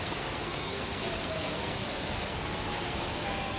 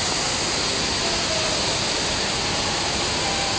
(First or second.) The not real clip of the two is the first